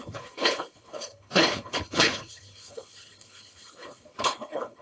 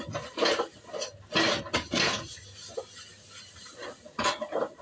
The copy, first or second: first